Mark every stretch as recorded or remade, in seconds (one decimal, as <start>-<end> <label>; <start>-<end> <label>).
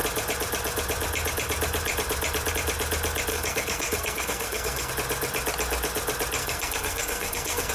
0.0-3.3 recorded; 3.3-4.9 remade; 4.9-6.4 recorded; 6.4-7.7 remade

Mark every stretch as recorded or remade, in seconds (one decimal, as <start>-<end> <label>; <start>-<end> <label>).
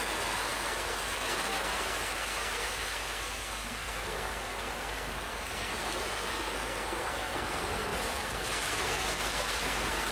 0.0-10.1 remade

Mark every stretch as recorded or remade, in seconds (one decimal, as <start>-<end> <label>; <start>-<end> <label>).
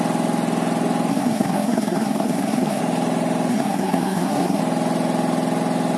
0.0-1.1 recorded; 1.1-2.8 remade; 2.8-3.5 recorded; 3.5-4.6 remade; 4.6-6.0 recorded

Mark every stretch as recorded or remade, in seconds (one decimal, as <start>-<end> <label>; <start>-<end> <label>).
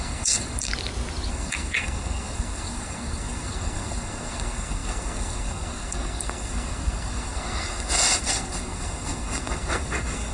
0.0-0.7 remade; 0.7-1.3 recorded; 1.3-10.3 remade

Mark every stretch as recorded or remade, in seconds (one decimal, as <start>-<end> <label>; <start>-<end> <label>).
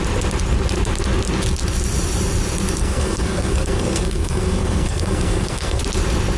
0.0-2.8 recorded; 2.8-5.8 remade; 5.8-6.4 recorded